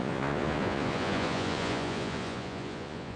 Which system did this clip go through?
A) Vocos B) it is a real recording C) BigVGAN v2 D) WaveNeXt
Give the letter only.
A